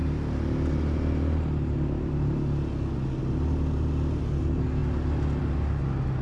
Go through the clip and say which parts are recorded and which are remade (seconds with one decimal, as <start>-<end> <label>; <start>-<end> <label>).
0.0-6.2 recorded